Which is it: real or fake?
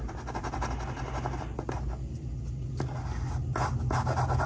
real